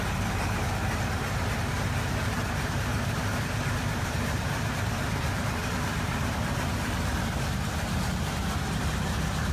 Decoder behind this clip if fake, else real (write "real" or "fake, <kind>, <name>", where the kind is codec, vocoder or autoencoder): fake, vocoder, BigVGAN v2